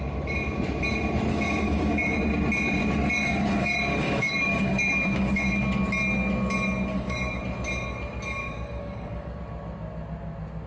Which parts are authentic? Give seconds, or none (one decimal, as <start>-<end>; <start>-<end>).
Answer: 0.0-1.3; 2.2-2.8; 5.6-6.9; 7.4-8.4; 9.4-10.7